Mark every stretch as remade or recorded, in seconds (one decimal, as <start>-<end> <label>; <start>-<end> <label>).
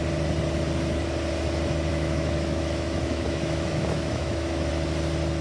0.0-1.9 recorded; 1.9-4.7 remade; 4.7-5.4 recorded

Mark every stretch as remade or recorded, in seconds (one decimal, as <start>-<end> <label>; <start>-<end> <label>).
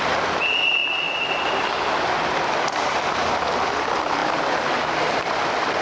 0.0-5.8 remade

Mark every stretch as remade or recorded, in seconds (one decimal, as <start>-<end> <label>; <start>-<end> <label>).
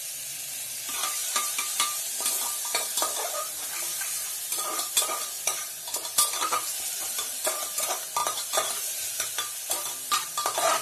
0.0-1.2 recorded; 1.2-2.3 remade; 2.3-4.5 recorded; 4.5-5.1 remade; 5.1-8.2 recorded; 8.2-8.8 remade; 8.8-10.8 recorded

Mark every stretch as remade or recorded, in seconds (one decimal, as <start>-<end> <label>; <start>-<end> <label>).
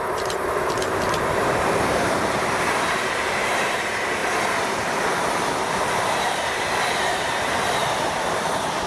0.0-4.2 remade; 4.2-5.7 recorded; 5.7-7.8 remade; 7.8-8.9 recorded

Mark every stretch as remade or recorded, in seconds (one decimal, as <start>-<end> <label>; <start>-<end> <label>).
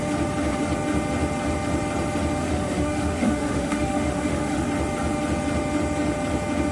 0.0-2.4 recorded; 2.4-4.7 remade; 4.7-6.7 recorded